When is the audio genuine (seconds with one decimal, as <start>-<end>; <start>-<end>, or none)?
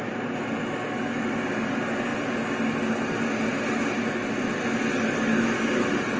0.0-4.9; 5.4-6.2